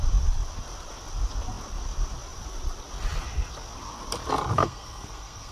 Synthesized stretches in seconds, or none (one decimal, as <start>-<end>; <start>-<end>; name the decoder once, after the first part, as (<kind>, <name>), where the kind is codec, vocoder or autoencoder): 4.6-5.5 (codec, SNAC)